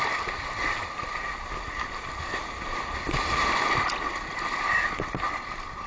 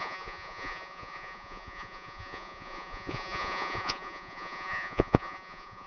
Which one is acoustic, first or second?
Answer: first